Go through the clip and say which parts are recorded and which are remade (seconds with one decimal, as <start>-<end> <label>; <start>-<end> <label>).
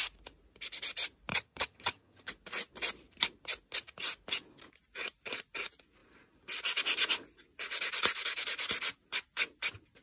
0.0-1.3 recorded; 1.3-2.3 remade; 2.3-10.0 recorded